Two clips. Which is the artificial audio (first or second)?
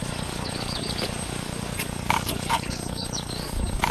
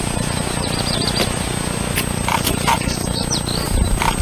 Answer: first